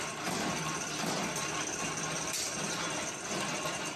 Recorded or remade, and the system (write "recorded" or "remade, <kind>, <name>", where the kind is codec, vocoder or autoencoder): recorded